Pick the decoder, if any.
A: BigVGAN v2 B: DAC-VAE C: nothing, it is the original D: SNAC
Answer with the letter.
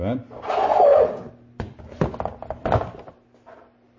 C